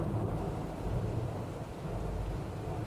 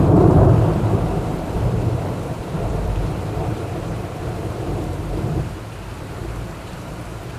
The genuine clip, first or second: first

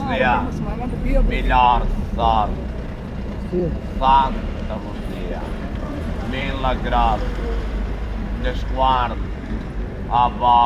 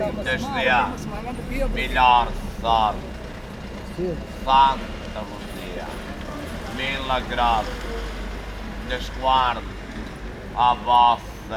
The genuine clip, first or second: second